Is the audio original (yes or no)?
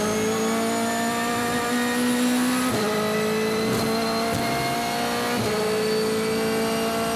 yes